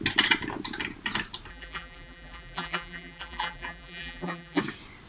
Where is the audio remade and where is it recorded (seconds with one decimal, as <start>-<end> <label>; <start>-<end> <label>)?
0.0-1.5 recorded; 1.5-4.6 remade; 4.6-5.1 recorded